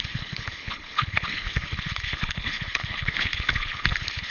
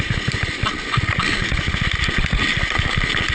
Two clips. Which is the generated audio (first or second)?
first